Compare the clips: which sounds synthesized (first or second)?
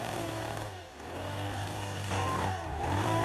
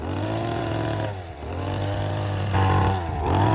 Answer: first